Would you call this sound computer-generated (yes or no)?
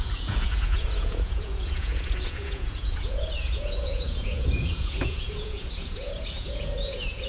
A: yes